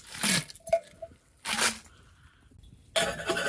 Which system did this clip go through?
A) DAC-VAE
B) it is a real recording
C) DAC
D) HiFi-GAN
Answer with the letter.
B